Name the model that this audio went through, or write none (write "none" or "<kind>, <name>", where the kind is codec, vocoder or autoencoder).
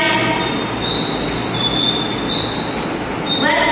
none